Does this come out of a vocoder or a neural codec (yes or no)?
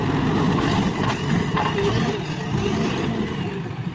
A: no